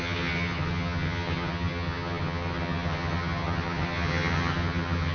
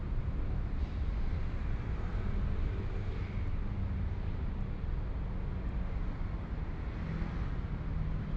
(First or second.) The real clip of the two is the second